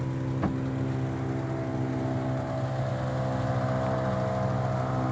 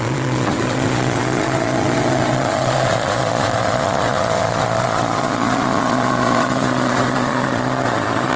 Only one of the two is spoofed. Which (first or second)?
second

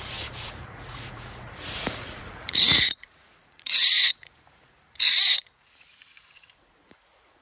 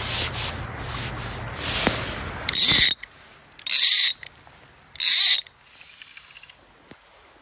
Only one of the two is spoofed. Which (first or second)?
first